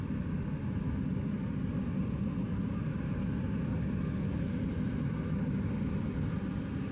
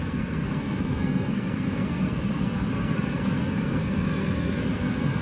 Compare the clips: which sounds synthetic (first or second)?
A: second